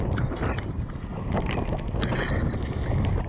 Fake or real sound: real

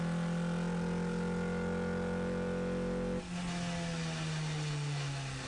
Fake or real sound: real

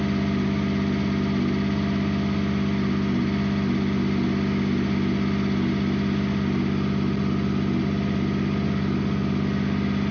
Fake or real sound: real